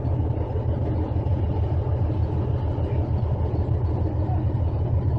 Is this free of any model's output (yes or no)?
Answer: yes